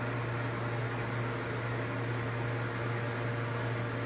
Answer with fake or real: real